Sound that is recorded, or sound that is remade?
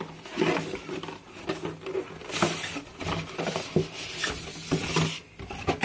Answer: recorded